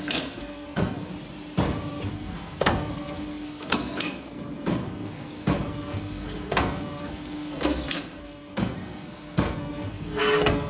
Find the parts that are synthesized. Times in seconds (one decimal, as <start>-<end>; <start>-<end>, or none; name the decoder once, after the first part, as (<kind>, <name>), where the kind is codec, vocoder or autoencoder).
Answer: 0.0-1.1 (codec, SNAC); 2.1-10.7